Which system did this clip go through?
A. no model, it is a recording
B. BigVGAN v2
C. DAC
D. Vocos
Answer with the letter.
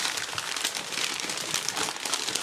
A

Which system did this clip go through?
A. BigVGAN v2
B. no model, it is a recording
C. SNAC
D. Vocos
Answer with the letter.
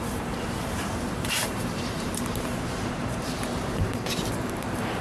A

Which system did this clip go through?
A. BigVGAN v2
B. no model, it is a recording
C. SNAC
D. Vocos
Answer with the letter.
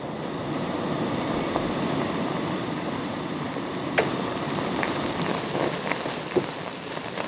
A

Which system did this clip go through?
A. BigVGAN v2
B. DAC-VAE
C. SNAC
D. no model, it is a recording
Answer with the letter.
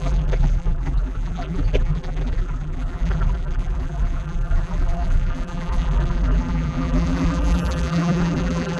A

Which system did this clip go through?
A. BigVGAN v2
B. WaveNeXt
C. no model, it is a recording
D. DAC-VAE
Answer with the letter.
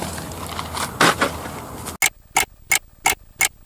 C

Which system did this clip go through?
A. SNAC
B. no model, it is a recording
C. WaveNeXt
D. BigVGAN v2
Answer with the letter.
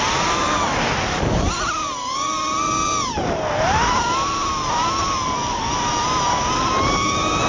B